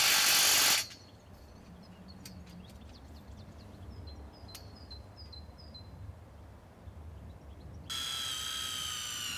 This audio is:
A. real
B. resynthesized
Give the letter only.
A